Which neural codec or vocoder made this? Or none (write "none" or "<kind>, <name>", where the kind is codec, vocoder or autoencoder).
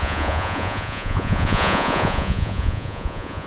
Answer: vocoder, Vocos